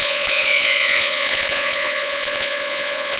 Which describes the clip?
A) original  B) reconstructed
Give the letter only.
B